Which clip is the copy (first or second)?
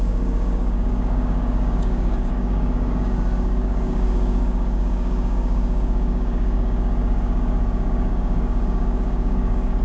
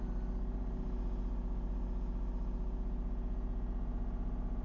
first